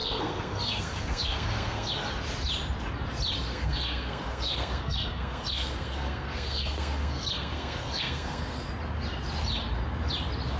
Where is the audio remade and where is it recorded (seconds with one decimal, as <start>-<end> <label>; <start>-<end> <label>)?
0.0-1.9 remade; 1.9-3.5 recorded; 3.5-8.7 remade; 8.7-10.6 recorded